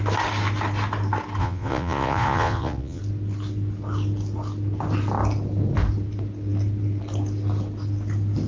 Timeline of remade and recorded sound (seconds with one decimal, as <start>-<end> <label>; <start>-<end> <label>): 0.0-1.4 recorded; 1.4-3.0 remade; 3.0-8.5 recorded